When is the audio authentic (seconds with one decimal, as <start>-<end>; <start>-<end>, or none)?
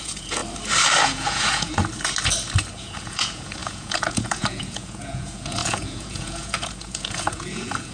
0.4-1.0; 1.8-2.7